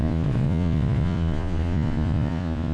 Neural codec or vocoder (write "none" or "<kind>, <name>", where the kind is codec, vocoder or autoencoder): vocoder, Vocos